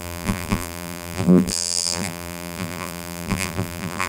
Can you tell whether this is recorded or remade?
remade